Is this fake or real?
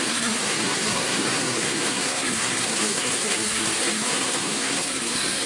fake